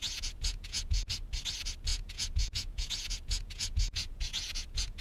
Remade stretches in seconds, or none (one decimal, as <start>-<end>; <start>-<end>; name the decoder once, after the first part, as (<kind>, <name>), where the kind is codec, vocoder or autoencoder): 0.0-1.1 (vocoder, Vocos); 1.9-5.0